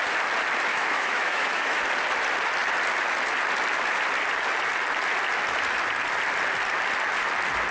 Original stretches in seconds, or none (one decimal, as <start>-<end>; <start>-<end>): 0.0-0.7; 1.8-7.7